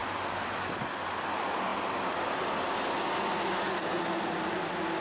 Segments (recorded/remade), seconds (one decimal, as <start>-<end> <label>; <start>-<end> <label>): 0.0-5.0 recorded